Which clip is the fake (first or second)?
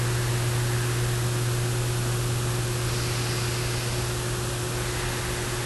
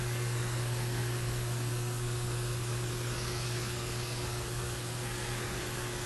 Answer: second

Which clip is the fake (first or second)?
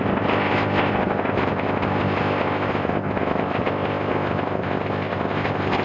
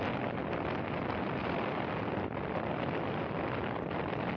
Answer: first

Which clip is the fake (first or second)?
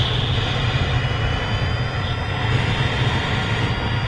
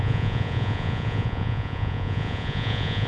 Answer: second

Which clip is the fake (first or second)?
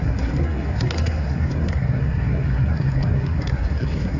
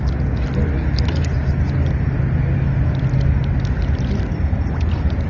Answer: first